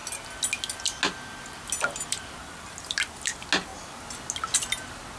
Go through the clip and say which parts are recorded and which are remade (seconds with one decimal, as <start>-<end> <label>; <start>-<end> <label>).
0.0-5.2 recorded